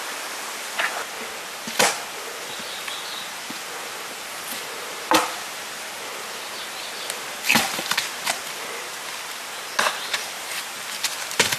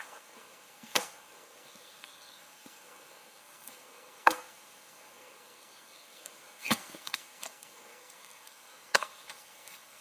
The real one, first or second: first